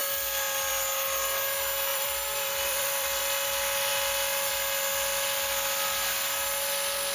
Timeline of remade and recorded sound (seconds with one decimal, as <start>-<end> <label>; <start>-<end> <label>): 0.0-1.9 recorded; 1.9-3.2 remade; 3.2-7.1 recorded